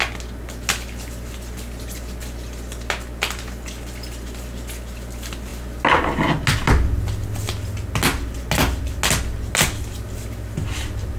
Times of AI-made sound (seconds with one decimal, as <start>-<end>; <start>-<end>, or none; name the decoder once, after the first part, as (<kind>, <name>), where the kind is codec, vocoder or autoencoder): none